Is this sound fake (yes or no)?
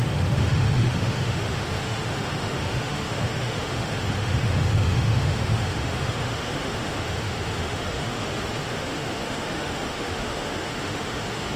yes